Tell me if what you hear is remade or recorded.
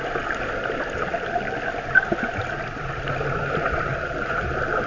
recorded